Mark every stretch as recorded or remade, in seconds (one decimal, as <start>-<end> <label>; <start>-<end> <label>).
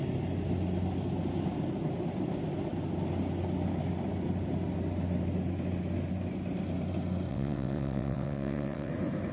0.0-7.3 recorded; 7.3-8.9 remade; 8.9-9.3 recorded